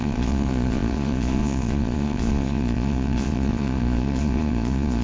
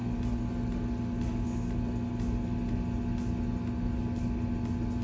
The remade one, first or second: first